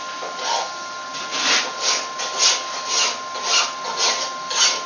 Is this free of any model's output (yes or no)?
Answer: yes